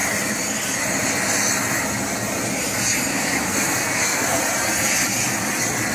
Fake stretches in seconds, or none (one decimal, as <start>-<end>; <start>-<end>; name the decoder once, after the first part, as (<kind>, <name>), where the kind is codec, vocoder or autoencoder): 3.1-4.4 (codec, SNAC)